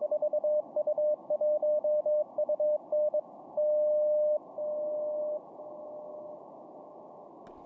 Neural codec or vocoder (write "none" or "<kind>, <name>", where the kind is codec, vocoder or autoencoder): none